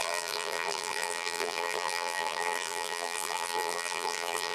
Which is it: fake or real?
fake